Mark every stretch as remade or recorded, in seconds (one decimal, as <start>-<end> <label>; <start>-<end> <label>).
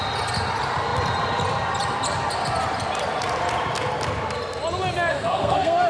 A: 0.0-5.1 recorded; 5.1-5.9 remade